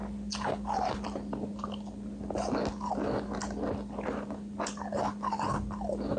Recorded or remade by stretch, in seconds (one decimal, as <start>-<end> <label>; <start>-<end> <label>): 0.0-6.2 recorded